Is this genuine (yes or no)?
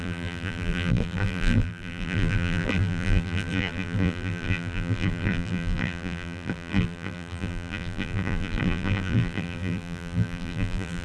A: no